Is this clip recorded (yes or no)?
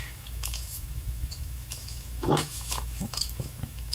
no